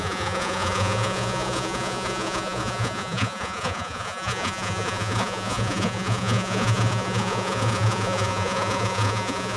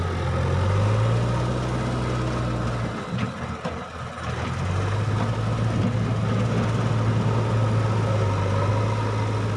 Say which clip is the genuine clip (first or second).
second